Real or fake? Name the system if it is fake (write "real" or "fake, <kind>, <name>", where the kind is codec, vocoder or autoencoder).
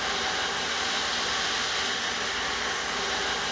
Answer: real